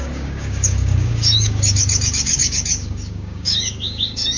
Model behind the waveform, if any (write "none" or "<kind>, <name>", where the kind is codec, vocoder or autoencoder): codec, DAC